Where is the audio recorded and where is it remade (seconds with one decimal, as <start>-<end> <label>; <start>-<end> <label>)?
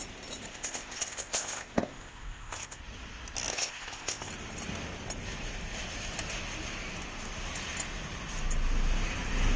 0.0-0.5 recorded; 0.5-2.8 remade; 2.8-3.5 recorded; 3.5-4.3 remade; 4.3-9.6 recorded